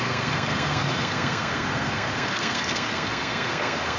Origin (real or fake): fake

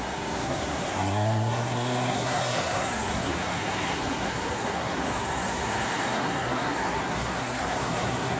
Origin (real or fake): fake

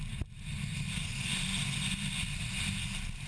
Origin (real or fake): real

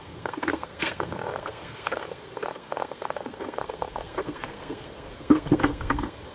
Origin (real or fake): fake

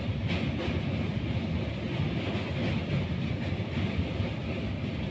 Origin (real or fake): real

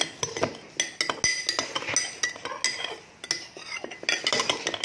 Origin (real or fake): real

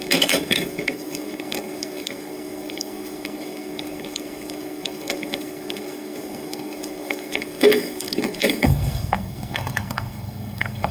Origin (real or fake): fake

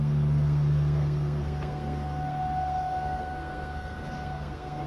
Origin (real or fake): fake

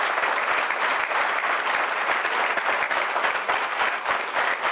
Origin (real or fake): real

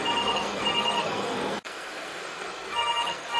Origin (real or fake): fake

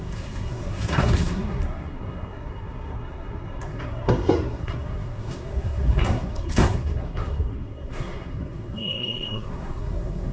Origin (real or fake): fake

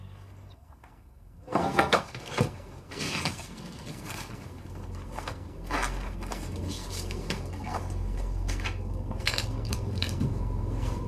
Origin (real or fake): fake